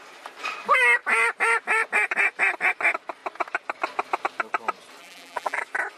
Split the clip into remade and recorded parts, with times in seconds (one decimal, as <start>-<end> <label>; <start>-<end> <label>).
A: 0.0-5.0 recorded; 5.0-5.6 remade; 5.6-6.0 recorded